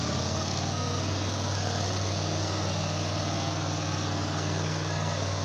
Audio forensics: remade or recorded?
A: remade